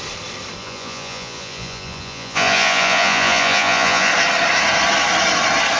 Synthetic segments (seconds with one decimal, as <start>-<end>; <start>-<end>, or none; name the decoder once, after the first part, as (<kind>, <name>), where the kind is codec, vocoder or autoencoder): 0.6-4.1 (vocoder, Vocos)